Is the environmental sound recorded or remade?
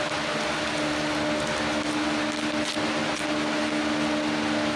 recorded